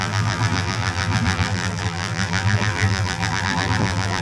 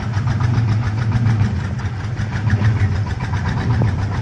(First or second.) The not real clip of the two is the first